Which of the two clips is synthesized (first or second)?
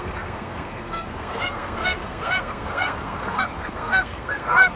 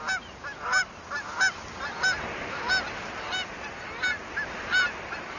first